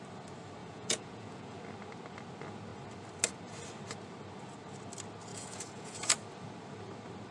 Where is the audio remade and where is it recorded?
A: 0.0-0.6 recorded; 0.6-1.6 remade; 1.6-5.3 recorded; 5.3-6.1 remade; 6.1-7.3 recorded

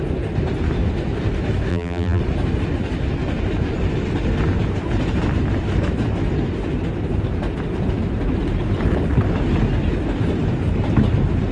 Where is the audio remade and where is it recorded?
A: 0.0-1.7 recorded; 1.7-2.2 remade; 2.2-11.5 recorded

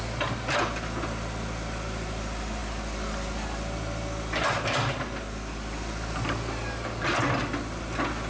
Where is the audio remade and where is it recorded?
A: 0.0-8.3 recorded